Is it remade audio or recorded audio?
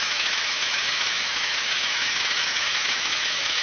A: remade